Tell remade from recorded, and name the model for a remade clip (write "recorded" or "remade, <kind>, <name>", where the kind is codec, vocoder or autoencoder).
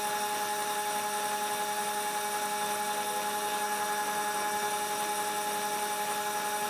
recorded